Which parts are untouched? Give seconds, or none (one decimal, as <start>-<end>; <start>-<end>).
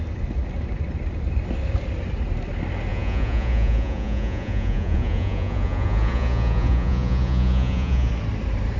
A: 0.0-2.9; 8.1-8.8